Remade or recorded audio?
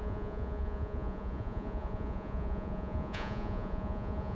remade